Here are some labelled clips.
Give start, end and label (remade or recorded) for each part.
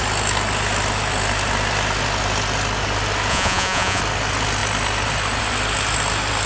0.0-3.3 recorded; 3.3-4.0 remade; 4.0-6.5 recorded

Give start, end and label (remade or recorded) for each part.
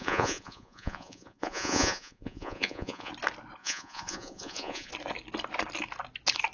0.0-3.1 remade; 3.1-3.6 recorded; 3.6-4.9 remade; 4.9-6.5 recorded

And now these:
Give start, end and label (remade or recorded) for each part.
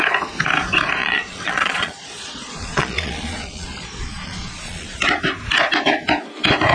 0.0-1.0 recorded; 1.0-5.0 remade; 5.0-6.7 recorded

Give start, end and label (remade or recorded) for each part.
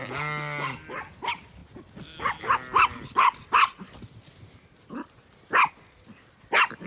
0.0-6.9 recorded